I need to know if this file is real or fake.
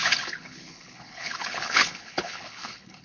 fake